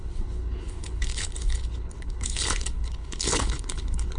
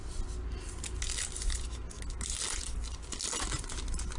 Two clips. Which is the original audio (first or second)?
second